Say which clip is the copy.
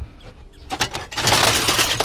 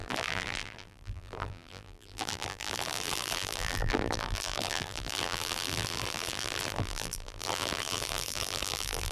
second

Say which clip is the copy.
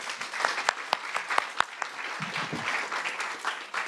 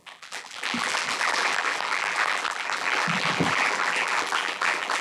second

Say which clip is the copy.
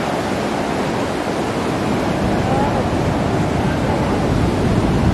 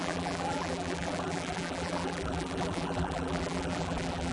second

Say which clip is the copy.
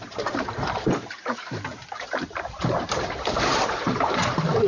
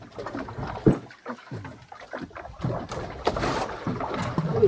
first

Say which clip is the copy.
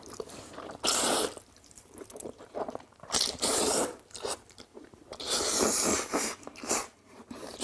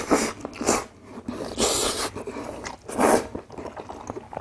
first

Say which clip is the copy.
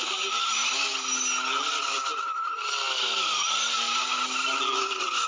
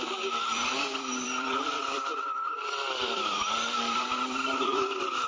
second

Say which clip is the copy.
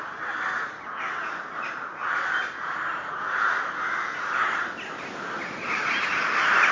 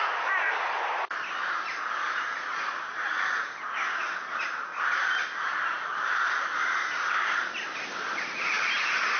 second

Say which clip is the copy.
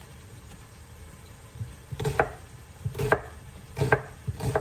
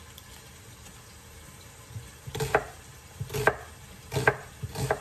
first